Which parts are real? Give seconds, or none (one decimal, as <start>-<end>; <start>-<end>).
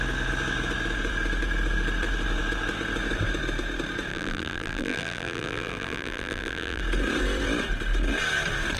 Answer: 0.0-4.1; 6.8-8.8